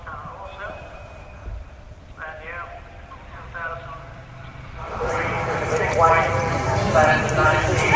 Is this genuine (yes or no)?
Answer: no